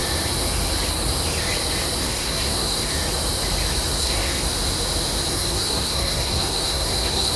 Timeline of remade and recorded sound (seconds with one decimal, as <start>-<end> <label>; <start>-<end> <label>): 0.0-2.0 recorded; 2.0-2.9 remade; 2.9-4.0 recorded; 4.0-4.4 remade; 4.4-5.3 recorded; 5.3-7.4 remade